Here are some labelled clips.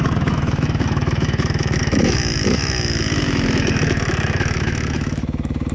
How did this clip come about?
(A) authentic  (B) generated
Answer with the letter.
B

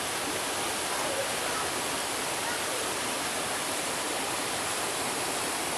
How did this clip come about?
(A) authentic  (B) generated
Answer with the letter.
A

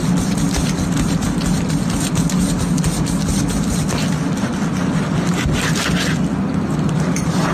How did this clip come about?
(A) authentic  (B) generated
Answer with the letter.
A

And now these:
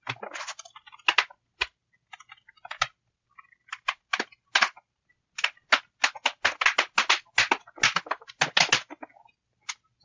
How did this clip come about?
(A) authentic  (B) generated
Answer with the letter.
A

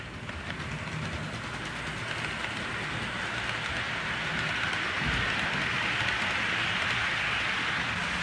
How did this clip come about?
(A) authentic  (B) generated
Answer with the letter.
A